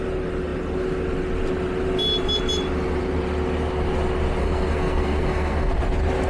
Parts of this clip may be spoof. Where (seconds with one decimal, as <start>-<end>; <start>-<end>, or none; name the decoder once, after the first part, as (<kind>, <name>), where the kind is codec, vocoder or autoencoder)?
4.4-5.7 (codec, SNAC)